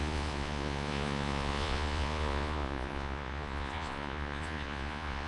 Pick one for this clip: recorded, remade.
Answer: remade